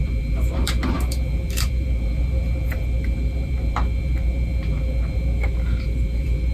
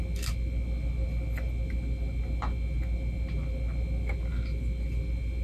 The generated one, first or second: first